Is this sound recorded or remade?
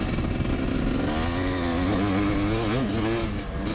recorded